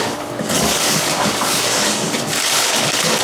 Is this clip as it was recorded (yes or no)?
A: no